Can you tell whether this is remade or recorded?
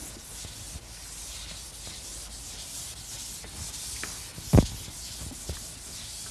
recorded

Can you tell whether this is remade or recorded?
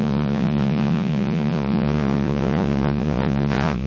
remade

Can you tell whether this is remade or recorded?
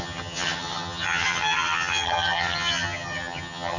remade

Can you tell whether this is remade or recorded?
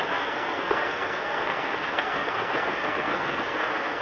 remade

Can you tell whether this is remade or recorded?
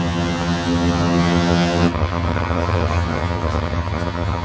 remade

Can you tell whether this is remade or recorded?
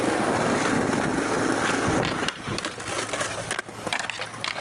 recorded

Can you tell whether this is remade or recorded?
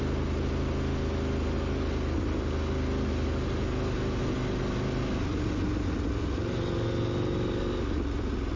recorded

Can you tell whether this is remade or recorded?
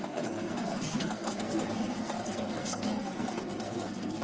remade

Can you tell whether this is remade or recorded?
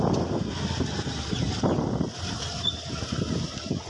recorded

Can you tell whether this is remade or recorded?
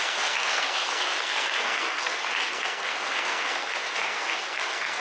remade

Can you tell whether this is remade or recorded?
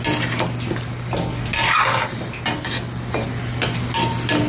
recorded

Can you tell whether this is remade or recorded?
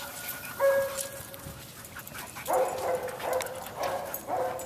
recorded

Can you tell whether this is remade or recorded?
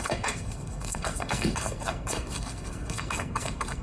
remade